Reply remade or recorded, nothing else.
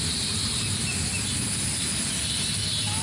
recorded